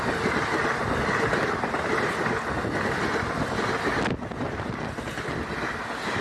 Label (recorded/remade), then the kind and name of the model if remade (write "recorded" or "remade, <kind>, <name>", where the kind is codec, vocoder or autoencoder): recorded